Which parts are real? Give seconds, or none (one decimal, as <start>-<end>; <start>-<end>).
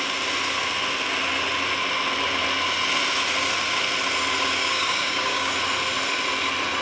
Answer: 0.0-4.6; 5.5-6.8